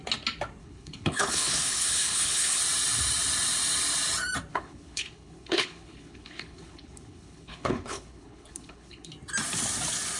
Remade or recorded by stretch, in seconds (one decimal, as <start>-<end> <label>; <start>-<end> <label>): 0.0-0.6 recorded; 0.6-2.6 remade; 2.6-4.5 recorded; 4.5-9.1 remade; 9.1-10.2 recorded